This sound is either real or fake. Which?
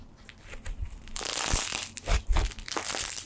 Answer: real